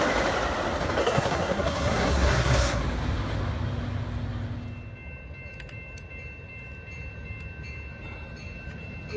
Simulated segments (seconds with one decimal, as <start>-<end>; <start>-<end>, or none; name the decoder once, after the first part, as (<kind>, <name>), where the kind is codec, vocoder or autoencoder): 1.0-2.8 (codec, SNAC)